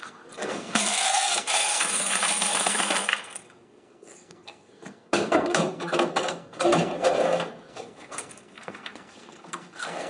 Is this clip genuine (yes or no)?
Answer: no